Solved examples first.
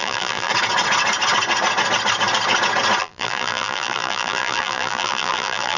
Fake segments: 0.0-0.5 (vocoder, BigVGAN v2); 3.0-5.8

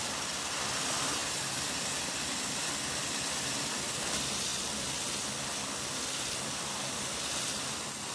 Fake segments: none

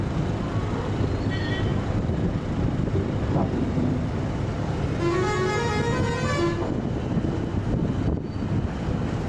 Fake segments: none

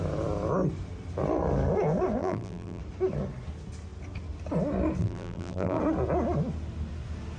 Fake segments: 2.2-2.8 (vocoder, BigVGAN v2); 5.0-5.8